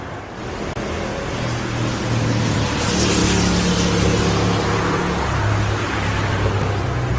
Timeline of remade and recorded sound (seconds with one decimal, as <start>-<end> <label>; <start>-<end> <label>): 0.0-7.2 recorded